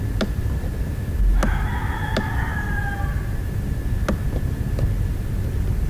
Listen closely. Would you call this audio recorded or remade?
recorded